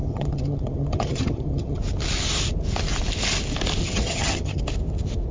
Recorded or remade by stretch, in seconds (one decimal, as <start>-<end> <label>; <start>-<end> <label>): 0.0-1.8 remade; 1.8-3.8 recorded; 3.8-4.6 remade; 4.6-5.3 recorded